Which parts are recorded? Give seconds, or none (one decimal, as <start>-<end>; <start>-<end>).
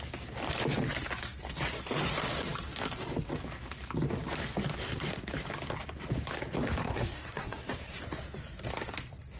0.0-6.8; 7.6-9.4